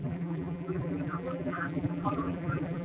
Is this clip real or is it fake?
fake